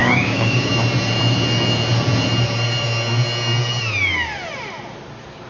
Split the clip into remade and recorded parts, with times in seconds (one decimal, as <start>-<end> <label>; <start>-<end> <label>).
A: 0.0-0.7 remade; 0.7-5.5 recorded